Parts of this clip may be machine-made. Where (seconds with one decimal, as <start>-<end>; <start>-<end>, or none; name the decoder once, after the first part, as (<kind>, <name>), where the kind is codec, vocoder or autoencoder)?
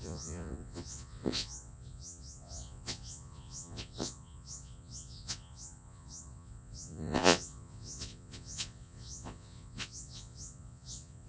0.0-11.3 (vocoder, Vocos)